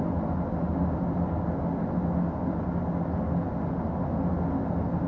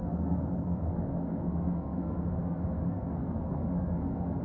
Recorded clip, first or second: first